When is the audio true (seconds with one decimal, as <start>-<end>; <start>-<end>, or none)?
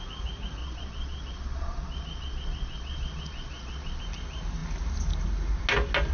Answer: 0.0-0.6; 4.0-6.1